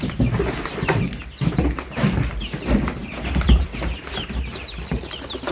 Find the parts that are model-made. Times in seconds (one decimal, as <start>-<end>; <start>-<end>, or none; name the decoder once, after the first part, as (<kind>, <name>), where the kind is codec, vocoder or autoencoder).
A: 1.2-1.9 (vocoder, BigVGAN v2); 3.0-4.0